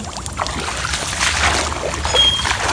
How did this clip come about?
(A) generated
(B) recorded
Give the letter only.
B